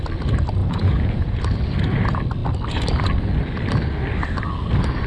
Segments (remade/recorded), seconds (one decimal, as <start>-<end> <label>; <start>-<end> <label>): 0.0-0.6 recorded; 0.6-1.4 remade; 1.4-5.1 recorded